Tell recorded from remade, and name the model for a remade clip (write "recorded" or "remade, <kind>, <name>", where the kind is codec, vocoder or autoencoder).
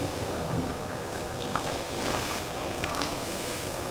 remade, codec, SNAC